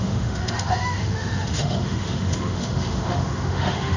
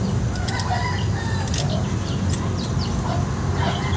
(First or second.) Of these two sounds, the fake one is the first